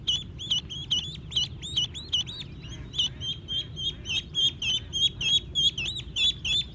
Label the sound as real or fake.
real